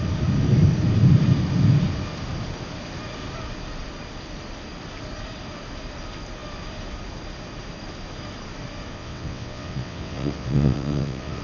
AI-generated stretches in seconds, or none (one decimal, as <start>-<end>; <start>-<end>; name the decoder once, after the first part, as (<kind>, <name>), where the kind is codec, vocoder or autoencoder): 8.9-11.4 (vocoder, WaveNeXt)